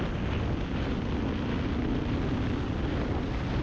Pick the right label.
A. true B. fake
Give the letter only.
A